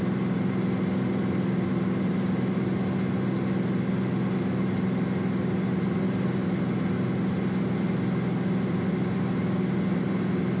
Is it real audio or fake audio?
real